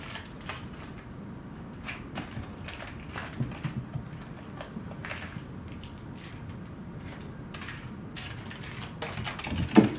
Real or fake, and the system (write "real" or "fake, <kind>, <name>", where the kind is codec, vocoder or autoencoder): real